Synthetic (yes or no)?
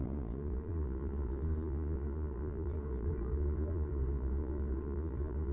yes